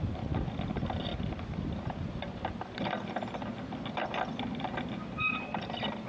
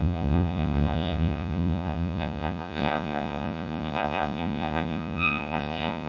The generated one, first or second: second